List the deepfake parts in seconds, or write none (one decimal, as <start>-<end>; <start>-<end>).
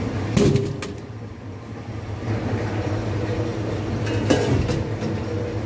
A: none